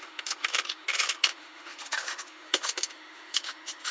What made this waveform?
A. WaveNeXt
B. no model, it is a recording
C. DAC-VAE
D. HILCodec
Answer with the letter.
C